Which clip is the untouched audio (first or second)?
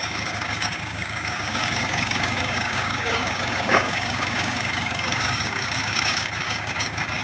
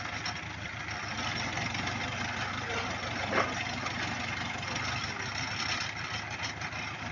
second